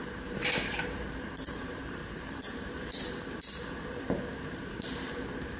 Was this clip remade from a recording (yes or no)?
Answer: yes